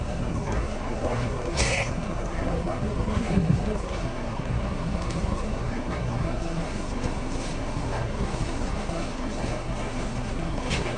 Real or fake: fake